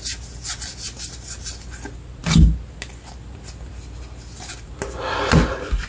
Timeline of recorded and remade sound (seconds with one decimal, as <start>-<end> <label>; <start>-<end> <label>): 0.0-5.9 recorded